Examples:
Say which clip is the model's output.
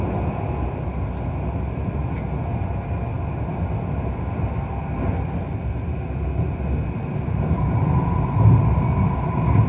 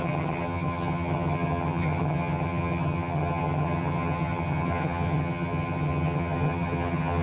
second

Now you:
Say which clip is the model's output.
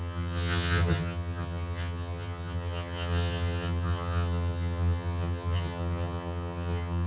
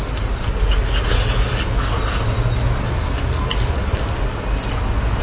first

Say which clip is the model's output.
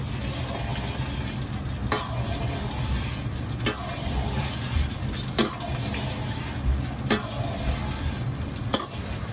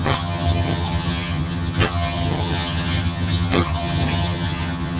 second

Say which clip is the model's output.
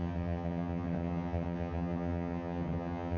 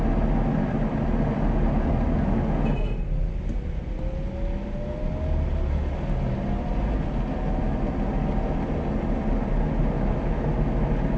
first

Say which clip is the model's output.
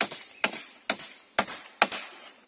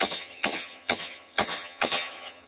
second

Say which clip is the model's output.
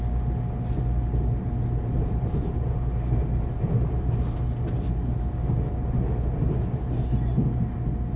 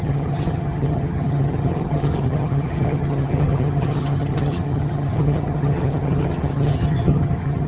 second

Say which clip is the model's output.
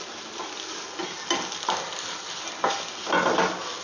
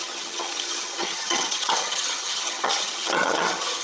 second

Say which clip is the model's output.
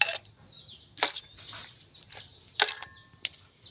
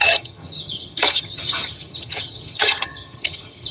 second